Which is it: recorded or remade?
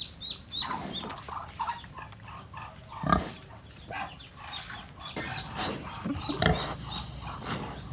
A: recorded